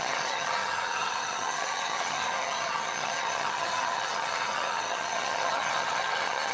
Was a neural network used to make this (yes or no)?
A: yes